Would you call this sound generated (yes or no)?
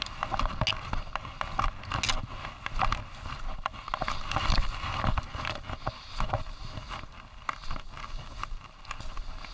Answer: no